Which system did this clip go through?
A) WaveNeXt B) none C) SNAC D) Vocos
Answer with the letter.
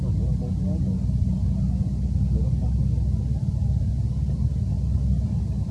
B